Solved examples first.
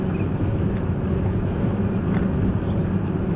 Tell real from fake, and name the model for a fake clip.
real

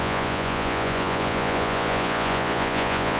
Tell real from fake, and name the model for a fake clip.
fake, vocoder, Vocos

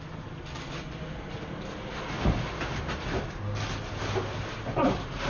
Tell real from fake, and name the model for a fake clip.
real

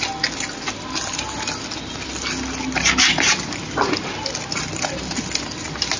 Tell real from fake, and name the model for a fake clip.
real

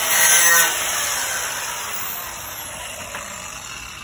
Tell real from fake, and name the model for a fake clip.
real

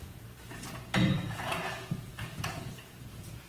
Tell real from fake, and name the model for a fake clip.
fake, vocoder, Vocos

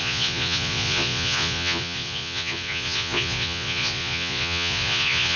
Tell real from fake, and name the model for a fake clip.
fake, vocoder, Vocos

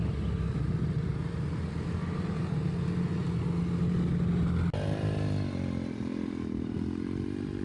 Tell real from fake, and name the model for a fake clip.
real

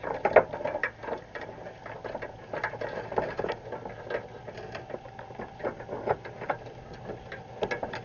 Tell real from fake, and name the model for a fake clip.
real